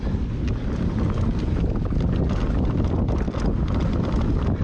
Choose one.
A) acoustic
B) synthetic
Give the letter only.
A